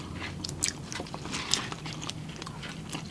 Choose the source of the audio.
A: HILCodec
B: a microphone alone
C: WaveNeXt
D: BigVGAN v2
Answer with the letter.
B